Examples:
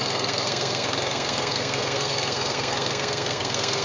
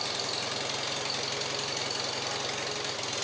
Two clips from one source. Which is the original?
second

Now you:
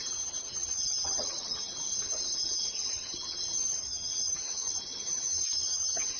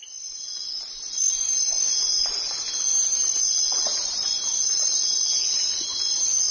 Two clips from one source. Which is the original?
second